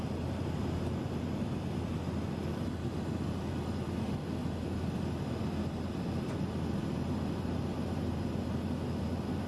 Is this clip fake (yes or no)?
no